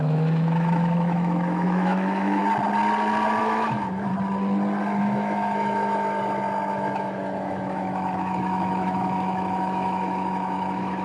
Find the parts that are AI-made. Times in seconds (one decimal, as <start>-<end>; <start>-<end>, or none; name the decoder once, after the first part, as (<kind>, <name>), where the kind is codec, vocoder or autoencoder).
0.0-2.4 (autoencoder, DAC-VAE); 3.4-4.1; 5.0-6.2; 6.7-11.0